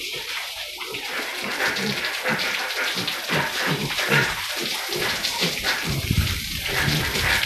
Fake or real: fake